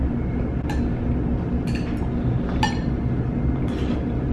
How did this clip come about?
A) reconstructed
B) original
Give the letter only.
B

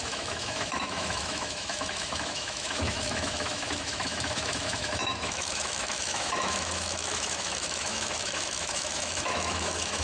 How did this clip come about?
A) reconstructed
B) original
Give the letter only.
A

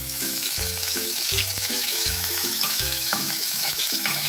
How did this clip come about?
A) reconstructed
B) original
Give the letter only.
A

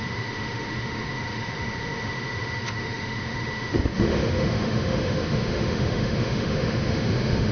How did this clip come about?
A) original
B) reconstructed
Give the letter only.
B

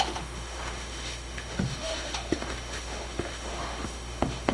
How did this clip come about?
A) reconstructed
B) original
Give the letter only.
A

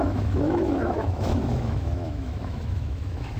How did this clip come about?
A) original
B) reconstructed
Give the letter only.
B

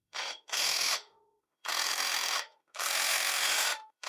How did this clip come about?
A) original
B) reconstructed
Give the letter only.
B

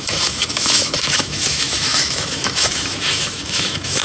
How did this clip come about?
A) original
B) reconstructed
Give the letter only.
B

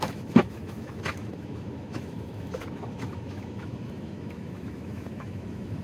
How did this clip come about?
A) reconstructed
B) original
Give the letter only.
A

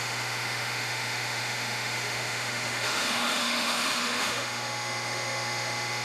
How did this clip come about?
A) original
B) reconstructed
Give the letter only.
B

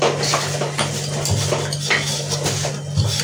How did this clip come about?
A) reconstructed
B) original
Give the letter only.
B